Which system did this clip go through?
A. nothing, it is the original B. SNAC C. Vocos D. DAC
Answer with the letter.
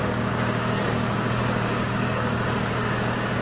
D